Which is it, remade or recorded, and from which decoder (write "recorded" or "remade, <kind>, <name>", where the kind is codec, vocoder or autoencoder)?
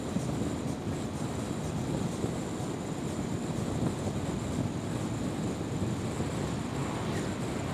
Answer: recorded